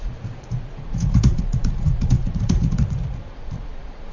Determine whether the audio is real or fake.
fake